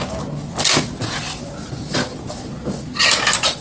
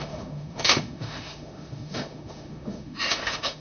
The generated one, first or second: second